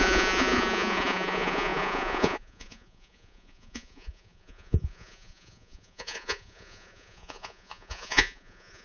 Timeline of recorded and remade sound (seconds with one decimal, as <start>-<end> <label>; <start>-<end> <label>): 0.0-8.8 remade

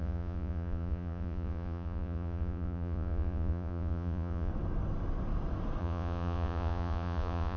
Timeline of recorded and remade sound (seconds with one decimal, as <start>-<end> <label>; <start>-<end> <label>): 0.0-4.5 remade; 4.5-5.8 recorded; 5.8-7.6 remade